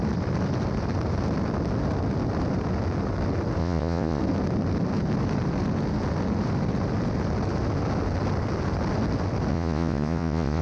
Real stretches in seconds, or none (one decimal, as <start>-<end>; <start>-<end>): 0.0-3.6; 4.2-9.5